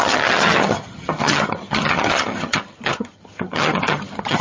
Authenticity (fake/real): fake